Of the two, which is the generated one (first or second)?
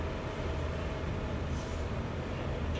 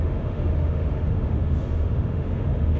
second